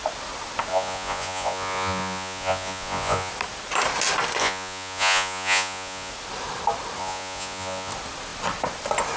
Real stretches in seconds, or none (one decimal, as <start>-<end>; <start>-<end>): 0.0-0.7; 3.3-4.4; 6.1-7.0; 7.9-9.2